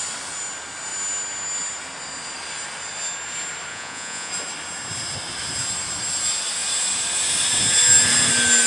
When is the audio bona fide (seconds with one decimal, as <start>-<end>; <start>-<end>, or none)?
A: 0.0-3.7; 4.3-8.7